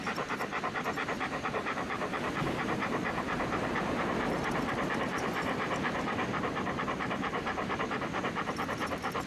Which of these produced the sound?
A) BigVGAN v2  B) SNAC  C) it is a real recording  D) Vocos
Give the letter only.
A